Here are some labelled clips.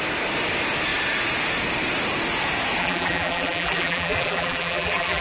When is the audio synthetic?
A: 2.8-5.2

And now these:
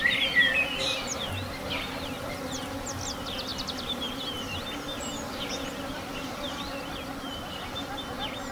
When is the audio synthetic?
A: none

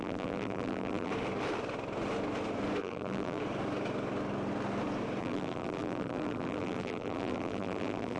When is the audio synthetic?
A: 0.0-1.1; 2.8-3.4; 5.2-8.2

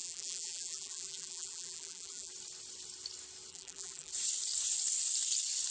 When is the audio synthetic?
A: 0.0-2.3; 3.5-4.1

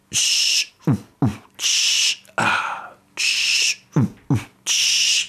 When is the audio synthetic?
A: none

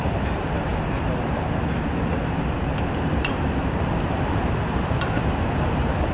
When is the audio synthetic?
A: 0.0-0.7; 2.2-6.1

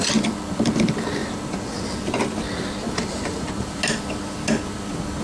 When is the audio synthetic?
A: 1.2-1.9; 2.8-3.8

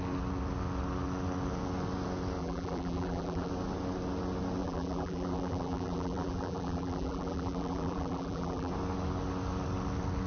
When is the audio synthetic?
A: 2.4-3.5; 4.6-8.7